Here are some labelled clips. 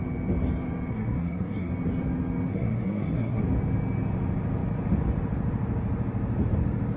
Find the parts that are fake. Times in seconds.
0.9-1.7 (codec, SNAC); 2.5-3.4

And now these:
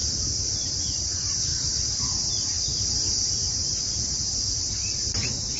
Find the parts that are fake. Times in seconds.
0.0-0.7 (vocoder, BigVGAN v2)

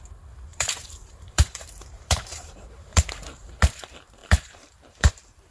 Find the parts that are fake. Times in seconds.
0.5-3.0 (vocoder, BigVGAN v2); 4.2-5.1

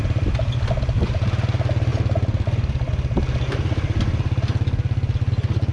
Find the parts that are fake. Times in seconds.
none

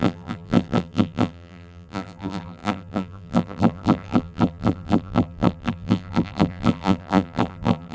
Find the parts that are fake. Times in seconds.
0.0-7.9 (vocoder, BigVGAN v2)

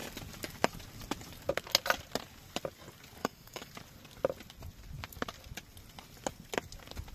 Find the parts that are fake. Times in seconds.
3.2-3.7 (codec, DAC)